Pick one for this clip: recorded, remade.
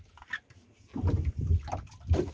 recorded